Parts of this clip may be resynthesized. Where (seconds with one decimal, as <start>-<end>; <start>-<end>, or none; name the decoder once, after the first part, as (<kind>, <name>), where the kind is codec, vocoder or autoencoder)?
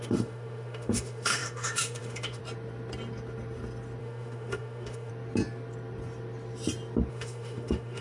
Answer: 0.0-2.4 (autoencoder, DAC-VAE); 4.0-5.1; 7.1-8.0